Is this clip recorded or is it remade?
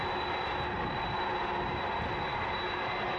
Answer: recorded